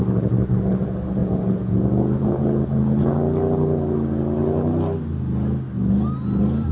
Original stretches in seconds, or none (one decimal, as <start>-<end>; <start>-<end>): 0.0-1.2; 3.1-6.7